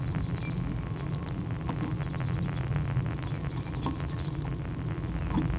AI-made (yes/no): no